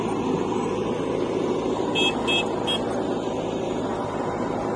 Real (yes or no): yes